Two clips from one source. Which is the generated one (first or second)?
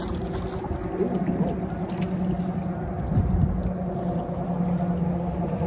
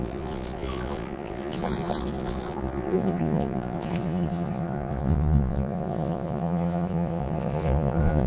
second